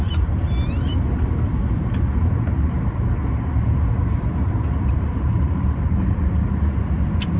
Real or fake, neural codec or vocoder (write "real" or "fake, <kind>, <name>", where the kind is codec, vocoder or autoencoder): fake, vocoder, BigVGAN v2